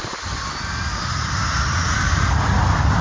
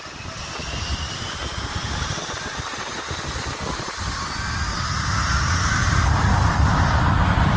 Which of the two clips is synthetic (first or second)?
second